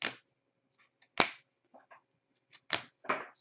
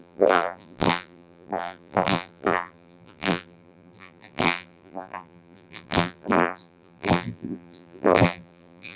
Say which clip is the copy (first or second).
second